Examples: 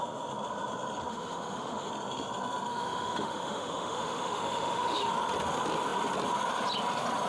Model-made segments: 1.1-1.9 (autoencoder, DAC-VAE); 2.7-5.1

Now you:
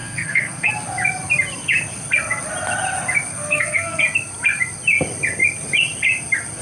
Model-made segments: 0.0-0.7 (codec, SNAC); 3.3-4.0

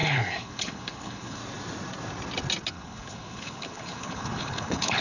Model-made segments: 0.0-1.4 (codec, HILCodec); 2.7-5.0

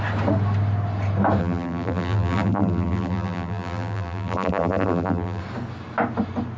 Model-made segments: 1.4-5.4 (vocoder, BigVGAN v2)

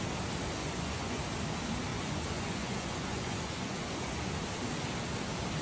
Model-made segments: 0.6-1.2 (vocoder, Vocos); 1.9-4.3

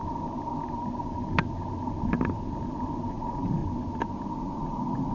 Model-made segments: 3.1-3.6 (vocoder, Vocos); 4.4-5.1

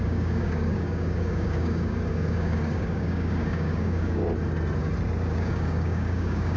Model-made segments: 0.0-4.2 (codec, DAC); 5.3-6.6

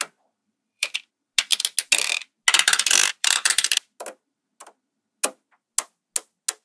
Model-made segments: 0.4-1.1 (vocoder, BigVGAN v2); 3.0-4.0